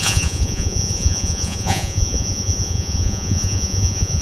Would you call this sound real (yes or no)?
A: no